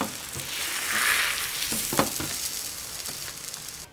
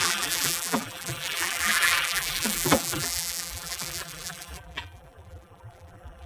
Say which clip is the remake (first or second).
second